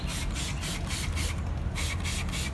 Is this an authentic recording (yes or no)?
yes